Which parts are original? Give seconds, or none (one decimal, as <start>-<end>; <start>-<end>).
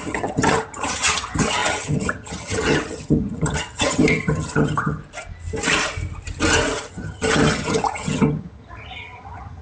5.0-6.9